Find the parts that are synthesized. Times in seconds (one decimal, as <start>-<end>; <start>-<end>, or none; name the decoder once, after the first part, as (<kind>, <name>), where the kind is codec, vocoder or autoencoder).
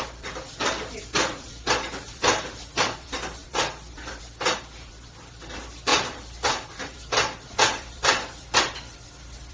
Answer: 0.0-9.5 (vocoder, BigVGAN v2)